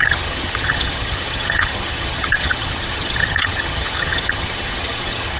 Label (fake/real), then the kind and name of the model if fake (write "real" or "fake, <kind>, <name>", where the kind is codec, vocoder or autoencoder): fake, vocoder, HiFi-GAN